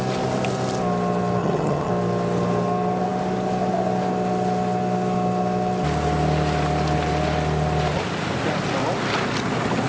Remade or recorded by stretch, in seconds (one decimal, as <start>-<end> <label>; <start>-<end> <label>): 0.0-1.4 recorded; 1.4-1.9 remade; 1.9-9.9 recorded